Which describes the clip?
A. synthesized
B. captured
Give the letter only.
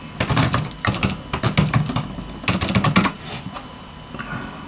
B